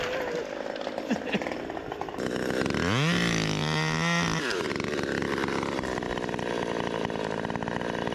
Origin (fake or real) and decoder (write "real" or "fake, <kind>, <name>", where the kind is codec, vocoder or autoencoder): real